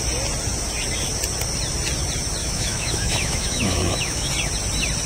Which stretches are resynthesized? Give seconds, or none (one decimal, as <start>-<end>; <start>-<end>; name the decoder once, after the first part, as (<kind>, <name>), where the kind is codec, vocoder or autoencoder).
2.4-4.3 (autoencoder, DAC-VAE)